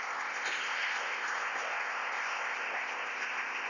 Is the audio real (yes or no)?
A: no